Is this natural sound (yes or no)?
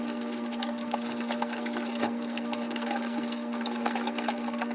no